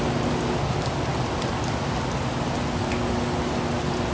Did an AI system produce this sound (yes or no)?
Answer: no